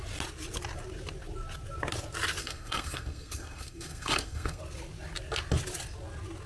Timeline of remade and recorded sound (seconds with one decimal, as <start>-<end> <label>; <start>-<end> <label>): 0.0-2.4 recorded; 2.4-4.6 remade; 4.6-6.5 recorded